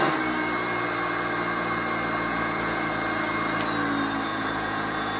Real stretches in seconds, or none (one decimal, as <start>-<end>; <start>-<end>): 0.0-2.3; 2.9-4.3